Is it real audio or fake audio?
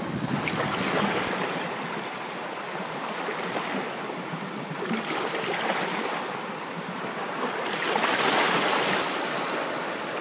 real